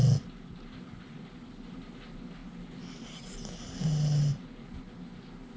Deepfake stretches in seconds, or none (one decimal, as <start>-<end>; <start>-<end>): none